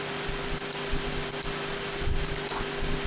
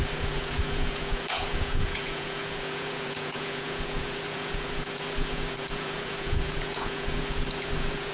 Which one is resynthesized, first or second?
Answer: second